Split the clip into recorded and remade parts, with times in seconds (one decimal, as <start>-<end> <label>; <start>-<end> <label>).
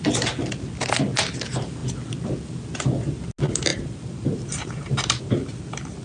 0.0-3.7 recorded; 3.7-5.2 remade; 5.2-6.0 recorded